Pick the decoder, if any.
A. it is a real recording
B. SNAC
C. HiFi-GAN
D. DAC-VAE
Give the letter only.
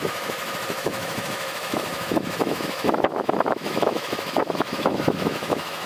D